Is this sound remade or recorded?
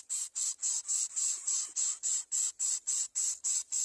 recorded